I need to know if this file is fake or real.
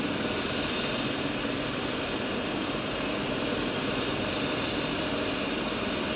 real